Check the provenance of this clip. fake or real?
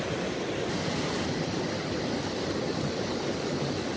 real